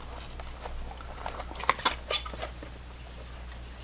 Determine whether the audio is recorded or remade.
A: recorded